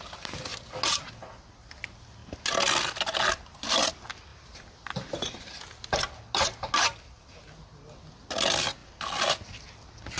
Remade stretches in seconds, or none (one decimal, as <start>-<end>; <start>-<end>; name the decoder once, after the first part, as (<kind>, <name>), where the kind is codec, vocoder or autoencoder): 4.3-5.5 (vocoder, BigVGAN v2)